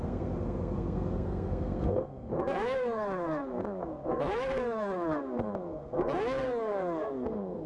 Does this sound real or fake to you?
fake